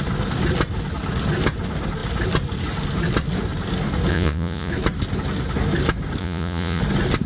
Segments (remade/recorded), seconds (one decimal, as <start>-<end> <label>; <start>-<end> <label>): 0.0-4.1 recorded; 4.1-4.7 remade; 4.7-6.2 recorded; 6.2-6.8 remade; 6.8-7.3 recorded